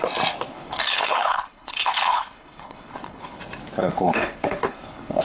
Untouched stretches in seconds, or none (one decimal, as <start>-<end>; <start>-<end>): 0.0-0.5; 3.4-3.8